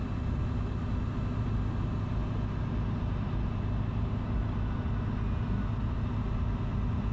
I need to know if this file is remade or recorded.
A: recorded